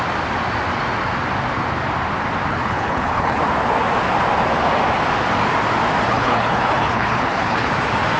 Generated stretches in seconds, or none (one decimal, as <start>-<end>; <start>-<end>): 2.5-3.4; 6.1-7.7